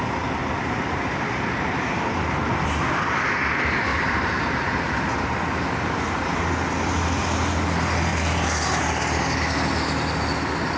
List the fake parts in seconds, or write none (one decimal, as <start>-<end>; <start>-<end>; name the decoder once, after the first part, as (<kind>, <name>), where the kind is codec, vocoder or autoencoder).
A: 0.4-1.9 (vocoder, BigVGAN v2); 3.9-4.9; 8.1-9.2